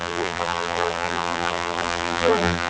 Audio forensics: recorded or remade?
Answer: remade